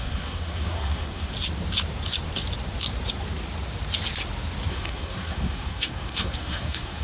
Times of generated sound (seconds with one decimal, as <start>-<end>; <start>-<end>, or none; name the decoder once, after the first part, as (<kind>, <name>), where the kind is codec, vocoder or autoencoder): 0.0-1.3 (codec, SNAC); 4.7-7.0